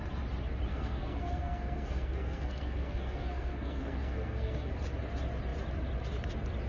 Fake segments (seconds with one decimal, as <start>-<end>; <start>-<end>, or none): 0.7-4.7